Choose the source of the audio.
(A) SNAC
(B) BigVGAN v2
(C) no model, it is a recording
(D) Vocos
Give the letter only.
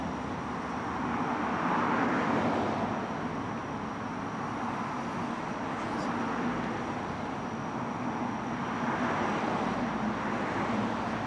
C